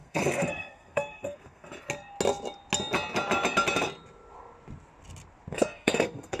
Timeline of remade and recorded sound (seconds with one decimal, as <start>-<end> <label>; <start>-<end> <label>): 0.0-1.7 remade; 1.7-5.5 recorded; 5.5-6.4 remade